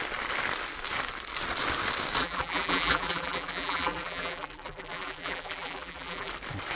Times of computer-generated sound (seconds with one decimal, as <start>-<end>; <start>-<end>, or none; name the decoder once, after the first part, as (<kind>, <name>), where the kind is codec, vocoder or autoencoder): 2.2-6.3 (vocoder, BigVGAN v2)